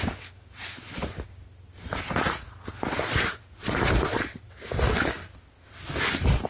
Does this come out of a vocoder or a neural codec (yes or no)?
no